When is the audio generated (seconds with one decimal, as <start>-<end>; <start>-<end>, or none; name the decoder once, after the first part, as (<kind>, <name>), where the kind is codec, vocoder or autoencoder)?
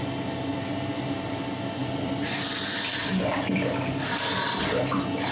1.8-3.1 (vocoder, BigVGAN v2)